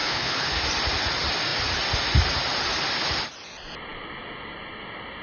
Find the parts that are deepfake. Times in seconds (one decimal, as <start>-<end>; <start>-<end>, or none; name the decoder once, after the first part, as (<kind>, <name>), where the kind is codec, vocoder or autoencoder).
0.0-0.5 (codec, HILCodec)